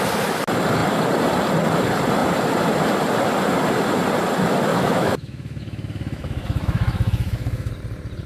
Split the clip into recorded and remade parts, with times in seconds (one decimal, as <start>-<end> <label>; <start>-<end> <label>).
0.0-4.7 recorded; 4.7-7.7 remade; 7.7-8.3 recorded